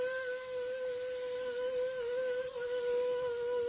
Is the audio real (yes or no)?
yes